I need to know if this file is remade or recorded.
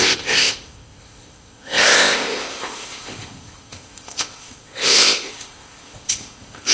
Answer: remade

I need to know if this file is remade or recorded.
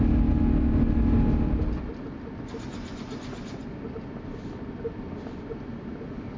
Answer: recorded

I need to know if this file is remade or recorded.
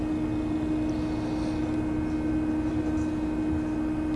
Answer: recorded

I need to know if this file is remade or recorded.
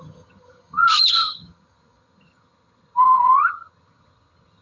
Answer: remade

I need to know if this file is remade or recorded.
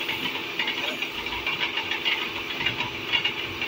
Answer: recorded